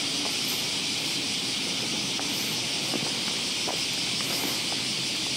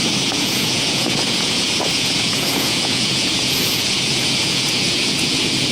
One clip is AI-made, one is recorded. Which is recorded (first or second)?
first